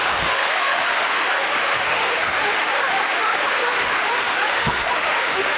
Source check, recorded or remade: remade